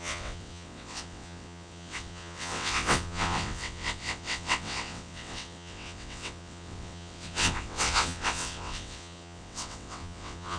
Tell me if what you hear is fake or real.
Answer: fake